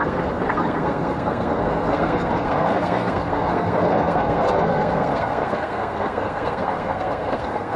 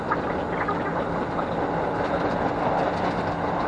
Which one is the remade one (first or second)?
first